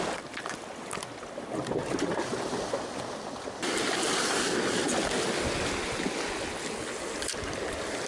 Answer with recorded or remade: recorded